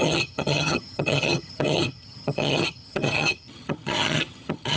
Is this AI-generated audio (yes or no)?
yes